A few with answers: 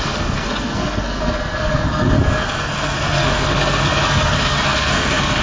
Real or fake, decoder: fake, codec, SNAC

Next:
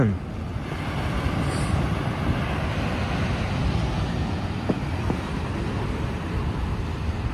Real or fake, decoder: real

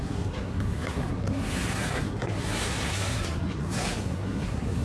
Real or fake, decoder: fake, codec, SNAC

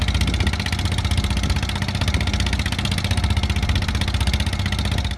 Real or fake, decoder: real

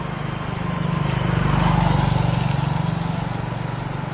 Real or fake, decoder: real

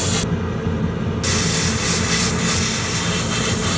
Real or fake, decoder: real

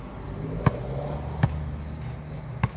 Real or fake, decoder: real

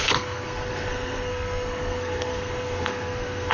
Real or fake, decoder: fake, codec, SNAC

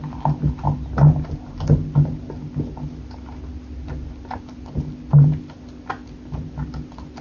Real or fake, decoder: real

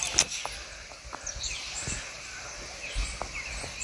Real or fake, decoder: real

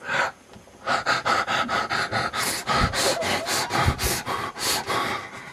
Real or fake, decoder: real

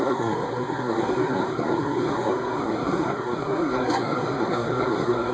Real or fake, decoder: fake, codec, SNAC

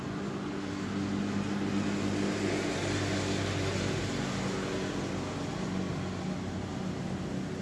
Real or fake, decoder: real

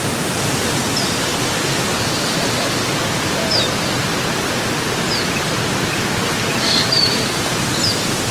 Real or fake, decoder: real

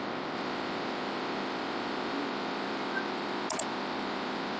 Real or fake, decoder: real